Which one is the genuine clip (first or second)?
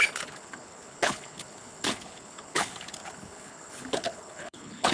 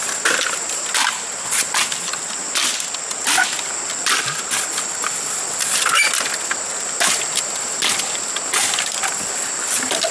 second